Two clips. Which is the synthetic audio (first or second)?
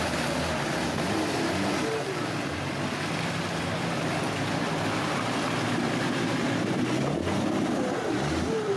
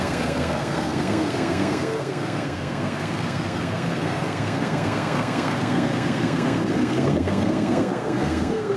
second